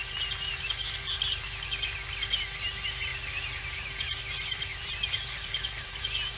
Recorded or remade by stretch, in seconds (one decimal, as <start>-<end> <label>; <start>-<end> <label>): 0.0-0.6 remade; 0.6-4.7 recorded; 4.7-6.0 remade; 6.0-6.4 recorded